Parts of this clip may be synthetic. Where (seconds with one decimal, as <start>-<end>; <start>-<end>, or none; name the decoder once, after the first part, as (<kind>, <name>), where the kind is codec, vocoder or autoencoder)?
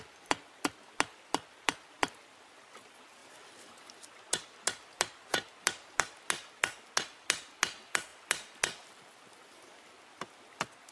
none